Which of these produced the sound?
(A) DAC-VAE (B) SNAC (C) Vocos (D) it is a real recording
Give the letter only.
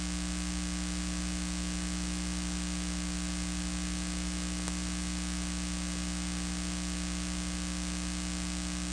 D